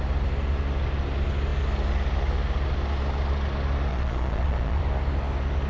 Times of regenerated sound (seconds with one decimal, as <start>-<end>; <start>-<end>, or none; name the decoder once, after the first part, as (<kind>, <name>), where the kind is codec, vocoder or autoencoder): 3.9-4.8 (vocoder, Vocos)